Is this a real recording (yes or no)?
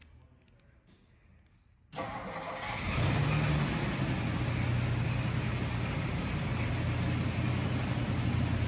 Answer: yes